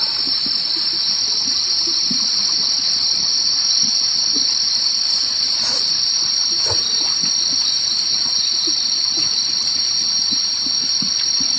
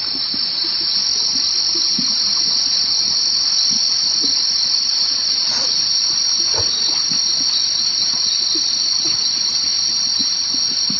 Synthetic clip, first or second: first